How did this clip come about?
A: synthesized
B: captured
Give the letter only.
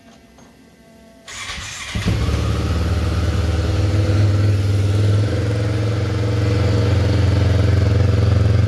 B